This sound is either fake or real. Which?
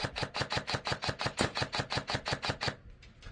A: real